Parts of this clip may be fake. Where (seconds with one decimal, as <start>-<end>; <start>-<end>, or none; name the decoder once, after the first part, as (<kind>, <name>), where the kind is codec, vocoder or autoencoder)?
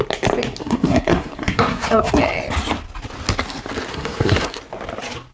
0.6-2.2 (codec, SNAC); 3.9-4.6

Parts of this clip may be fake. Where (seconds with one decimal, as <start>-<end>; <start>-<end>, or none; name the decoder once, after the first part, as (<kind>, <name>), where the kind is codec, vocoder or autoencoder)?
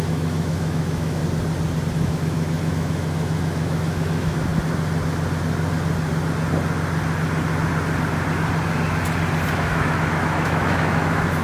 0.0-1.2 (autoencoder, DAC-VAE); 1.9-4.5; 9.5-11.4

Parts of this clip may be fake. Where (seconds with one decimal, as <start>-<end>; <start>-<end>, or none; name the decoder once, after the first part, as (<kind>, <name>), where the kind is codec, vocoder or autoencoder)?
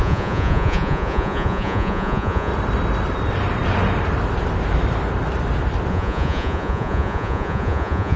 0.0-2.5 (vocoder, Vocos); 5.9-8.2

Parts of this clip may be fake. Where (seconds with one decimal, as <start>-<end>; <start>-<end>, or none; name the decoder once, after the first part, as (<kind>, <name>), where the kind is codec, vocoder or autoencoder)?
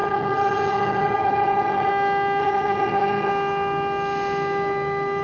0.0-1.9 (vocoder, HiFi-GAN); 2.4-3.3